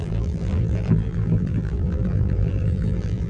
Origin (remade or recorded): remade